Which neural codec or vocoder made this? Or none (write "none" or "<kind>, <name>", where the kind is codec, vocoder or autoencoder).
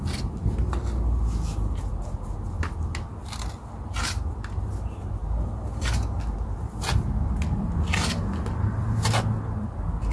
none